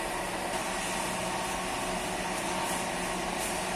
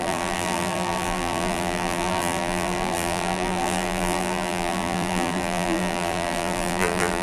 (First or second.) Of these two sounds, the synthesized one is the second